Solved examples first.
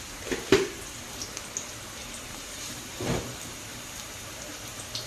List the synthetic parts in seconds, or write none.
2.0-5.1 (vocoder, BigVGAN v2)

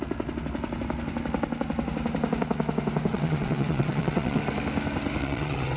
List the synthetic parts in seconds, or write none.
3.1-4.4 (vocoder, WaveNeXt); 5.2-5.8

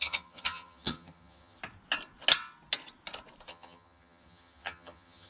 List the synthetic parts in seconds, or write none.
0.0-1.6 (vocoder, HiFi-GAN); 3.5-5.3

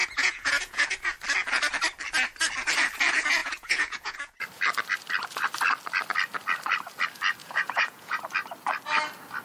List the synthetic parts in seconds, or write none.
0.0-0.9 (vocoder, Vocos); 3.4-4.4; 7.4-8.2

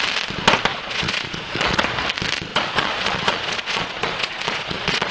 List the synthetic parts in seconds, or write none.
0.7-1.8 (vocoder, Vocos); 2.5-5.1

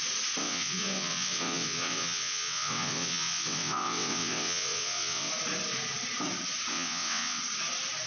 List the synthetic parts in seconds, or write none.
0.4-5.3 (vocoder, WaveNeXt); 6.7-7.4

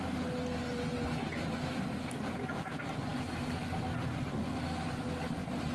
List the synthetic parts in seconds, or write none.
none

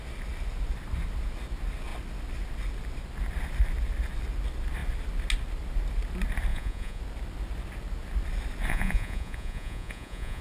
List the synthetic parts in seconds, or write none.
6.5-7.0 (vocoder, Vocos); 8.7-10.4